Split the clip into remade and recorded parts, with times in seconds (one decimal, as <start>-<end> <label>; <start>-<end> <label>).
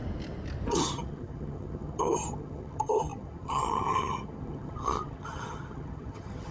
0.0-0.7 recorded; 0.7-6.5 remade